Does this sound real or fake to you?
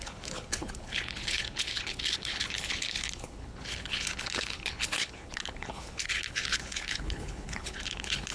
fake